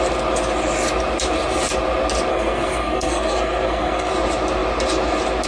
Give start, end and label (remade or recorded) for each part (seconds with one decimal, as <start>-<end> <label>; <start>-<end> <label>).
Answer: 0.0-2.3 recorded; 2.3-4.1 remade; 4.1-5.5 recorded